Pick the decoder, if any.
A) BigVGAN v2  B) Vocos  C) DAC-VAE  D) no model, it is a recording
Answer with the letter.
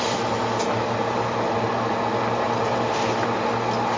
D